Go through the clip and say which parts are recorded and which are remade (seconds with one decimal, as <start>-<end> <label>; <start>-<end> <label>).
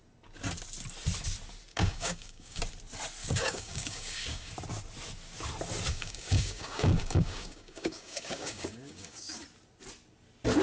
0.0-1.7 recorded; 1.7-2.6 remade; 2.6-3.2 recorded; 3.2-4.5 remade; 4.5-5.9 recorded; 5.9-9.4 remade; 9.4-10.6 recorded